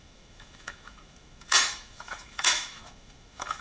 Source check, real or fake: fake